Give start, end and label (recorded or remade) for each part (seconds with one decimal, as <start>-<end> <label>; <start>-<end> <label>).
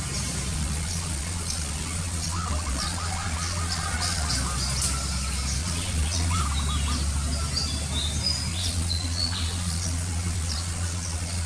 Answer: 0.0-0.5 recorded; 0.5-4.3 remade; 4.3-5.6 recorded; 5.6-6.4 remade; 6.4-8.5 recorded; 8.5-11.5 remade